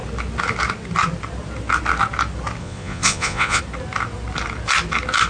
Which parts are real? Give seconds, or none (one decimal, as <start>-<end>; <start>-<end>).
0.0-2.6; 3.6-5.3